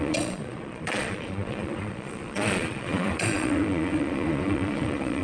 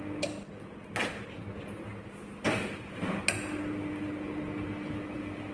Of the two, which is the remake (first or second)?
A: first